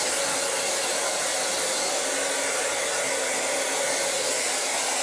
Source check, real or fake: real